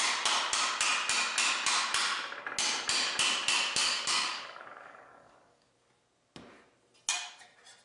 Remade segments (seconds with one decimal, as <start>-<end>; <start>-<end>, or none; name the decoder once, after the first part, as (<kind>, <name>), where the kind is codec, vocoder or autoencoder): 3.8-5.7 (codec, DAC)

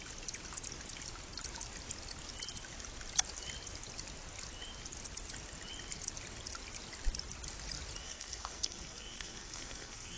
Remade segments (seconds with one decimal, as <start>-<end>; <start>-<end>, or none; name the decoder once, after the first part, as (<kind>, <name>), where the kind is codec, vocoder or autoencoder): 8.0-10.2 (codec, SNAC)

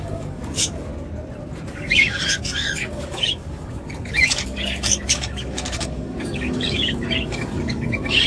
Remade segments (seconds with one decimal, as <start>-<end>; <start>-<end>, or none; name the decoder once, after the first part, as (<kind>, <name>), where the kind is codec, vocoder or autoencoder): 0.0-0.9 (codec, DAC); 1.7-8.3

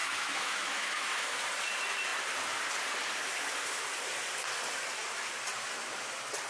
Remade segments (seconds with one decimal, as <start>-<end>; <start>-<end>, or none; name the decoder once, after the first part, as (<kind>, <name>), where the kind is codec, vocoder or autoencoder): 0.0-1.4 (autoencoder, DAC-VAE)